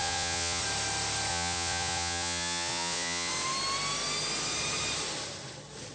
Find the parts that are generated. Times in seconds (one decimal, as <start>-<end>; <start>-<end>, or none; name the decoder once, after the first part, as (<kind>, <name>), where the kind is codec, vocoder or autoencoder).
0.0-0.6 (vocoder, Vocos); 1.3-3.3